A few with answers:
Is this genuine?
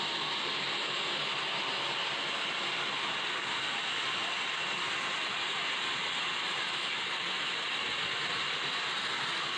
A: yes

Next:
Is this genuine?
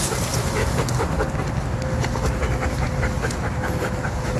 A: yes